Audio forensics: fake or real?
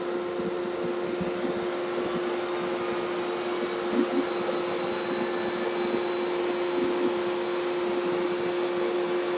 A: real